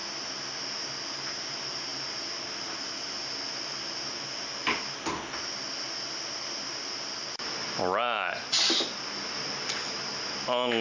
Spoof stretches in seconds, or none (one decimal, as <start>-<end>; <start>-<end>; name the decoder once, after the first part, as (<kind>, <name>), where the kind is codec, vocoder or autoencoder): none